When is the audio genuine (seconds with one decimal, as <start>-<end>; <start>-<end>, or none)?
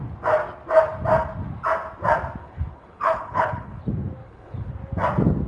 0.0-2.4; 3.8-4.2; 4.7-5.5